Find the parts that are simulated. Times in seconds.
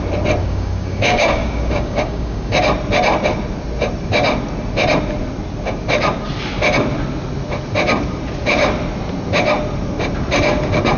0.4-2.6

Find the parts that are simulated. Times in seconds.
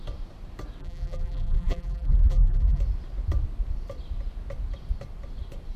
0.8-2.8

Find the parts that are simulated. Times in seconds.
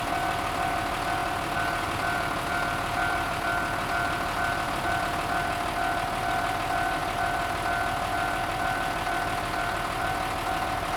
1.2-5.0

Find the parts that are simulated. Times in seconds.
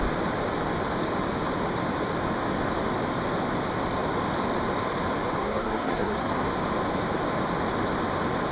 5.4-6.3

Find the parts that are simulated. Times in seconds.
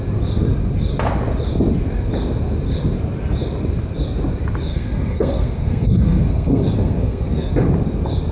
4.7-7.5